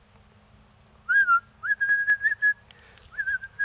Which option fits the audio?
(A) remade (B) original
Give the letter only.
B